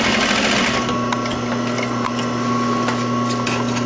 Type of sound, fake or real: real